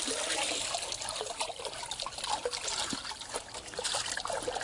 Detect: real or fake real